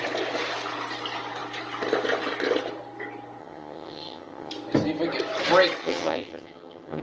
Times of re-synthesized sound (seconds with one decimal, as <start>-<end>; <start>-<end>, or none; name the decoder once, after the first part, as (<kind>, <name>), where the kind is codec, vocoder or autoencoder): 3.4-4.5 (vocoder, HiFi-GAN); 5.8-7.0